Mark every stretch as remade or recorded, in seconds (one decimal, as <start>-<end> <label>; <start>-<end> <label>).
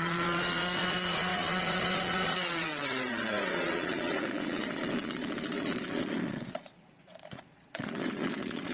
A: 0.0-8.7 remade